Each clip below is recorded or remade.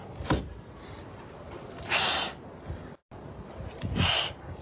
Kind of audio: recorded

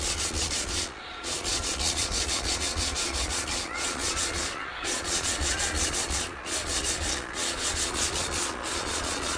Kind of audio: remade